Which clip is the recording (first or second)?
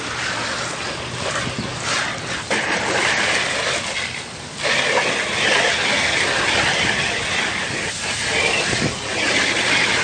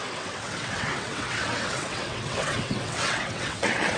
first